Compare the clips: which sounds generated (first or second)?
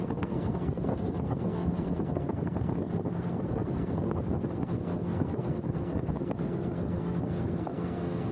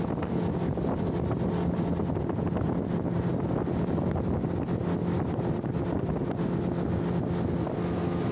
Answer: first